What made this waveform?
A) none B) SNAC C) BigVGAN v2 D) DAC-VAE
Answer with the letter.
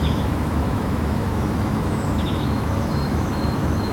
D